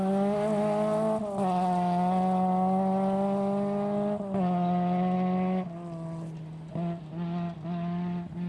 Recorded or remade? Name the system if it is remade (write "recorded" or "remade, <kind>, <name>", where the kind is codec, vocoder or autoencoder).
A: recorded